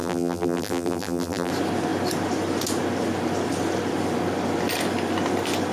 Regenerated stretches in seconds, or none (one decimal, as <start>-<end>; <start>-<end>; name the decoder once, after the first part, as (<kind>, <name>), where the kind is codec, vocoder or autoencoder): 0.0-1.5 (vocoder, BigVGAN v2)